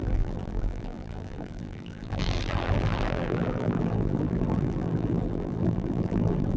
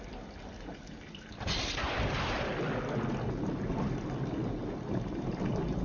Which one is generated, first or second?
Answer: first